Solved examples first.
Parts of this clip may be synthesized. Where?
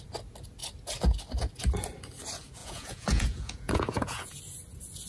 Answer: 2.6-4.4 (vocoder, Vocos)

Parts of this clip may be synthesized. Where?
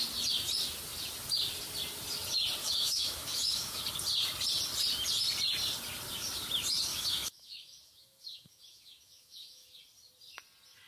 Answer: 2.6-3.8 (autoencoder, DAC-VAE); 6.9-9.8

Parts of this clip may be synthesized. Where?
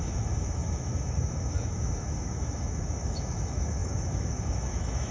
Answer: 0.0-5.1 (autoencoder, DAC-VAE)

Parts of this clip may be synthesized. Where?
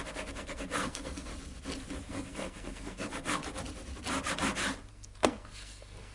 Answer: 0.0-1.3 (codec, SNAC); 2.1-3.4; 4.9-6.1